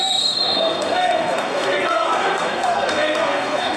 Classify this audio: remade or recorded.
remade